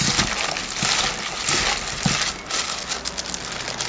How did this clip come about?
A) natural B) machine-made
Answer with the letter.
A